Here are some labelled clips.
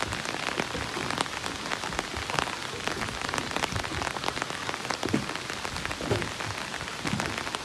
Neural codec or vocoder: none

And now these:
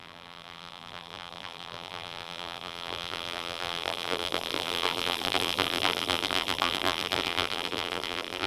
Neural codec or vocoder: vocoder, BigVGAN v2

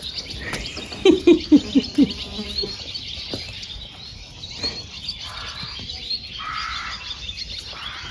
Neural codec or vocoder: none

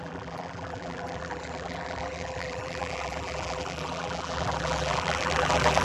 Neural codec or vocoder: vocoder, BigVGAN v2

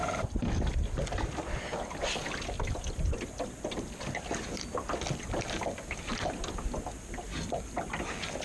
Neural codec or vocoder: none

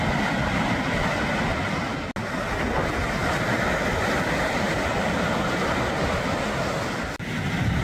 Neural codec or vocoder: none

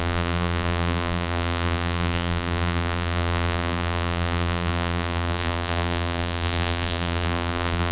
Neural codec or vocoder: vocoder, BigVGAN v2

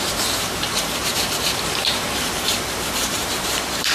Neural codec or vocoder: vocoder, BigVGAN v2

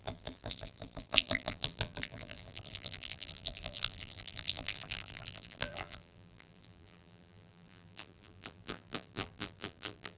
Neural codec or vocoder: vocoder, BigVGAN v2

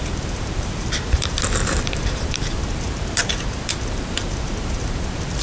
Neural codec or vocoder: vocoder, BigVGAN v2